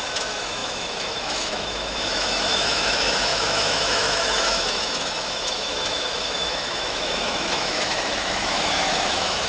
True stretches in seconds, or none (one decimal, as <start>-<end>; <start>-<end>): none